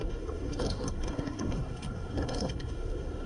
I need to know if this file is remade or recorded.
remade